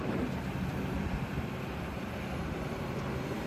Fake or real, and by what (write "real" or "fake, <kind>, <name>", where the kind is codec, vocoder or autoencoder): fake, vocoder, BigVGAN v2